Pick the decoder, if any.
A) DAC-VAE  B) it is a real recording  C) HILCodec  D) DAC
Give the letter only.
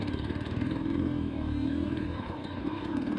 D